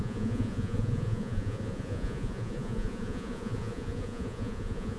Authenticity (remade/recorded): remade